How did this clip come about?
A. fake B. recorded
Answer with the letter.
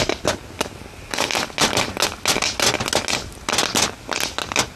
B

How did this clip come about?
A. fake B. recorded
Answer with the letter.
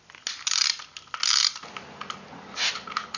B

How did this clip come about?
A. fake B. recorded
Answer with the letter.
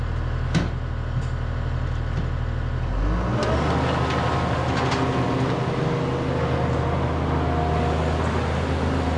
B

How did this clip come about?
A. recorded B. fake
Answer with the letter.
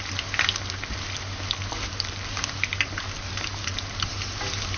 A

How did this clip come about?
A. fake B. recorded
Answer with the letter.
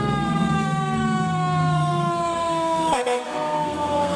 A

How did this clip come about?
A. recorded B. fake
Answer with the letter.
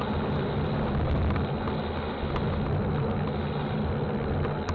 A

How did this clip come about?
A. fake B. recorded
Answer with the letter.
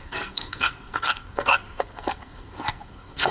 A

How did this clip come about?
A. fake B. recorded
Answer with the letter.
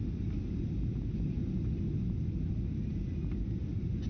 B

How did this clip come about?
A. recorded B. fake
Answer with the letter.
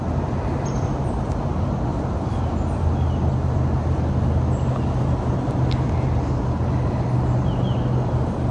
A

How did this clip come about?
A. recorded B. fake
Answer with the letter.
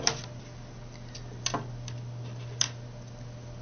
A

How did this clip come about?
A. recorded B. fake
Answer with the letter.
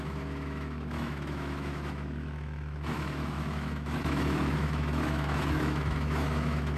B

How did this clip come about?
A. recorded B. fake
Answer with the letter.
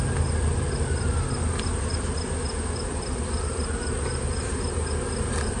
A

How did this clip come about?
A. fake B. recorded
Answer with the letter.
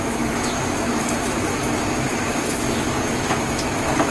A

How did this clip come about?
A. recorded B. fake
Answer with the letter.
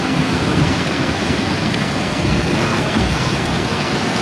B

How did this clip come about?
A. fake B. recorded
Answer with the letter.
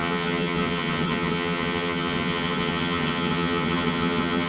A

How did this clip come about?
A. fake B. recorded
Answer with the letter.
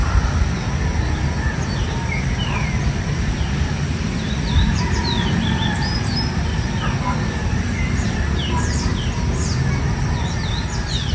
B